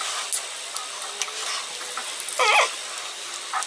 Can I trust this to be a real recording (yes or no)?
yes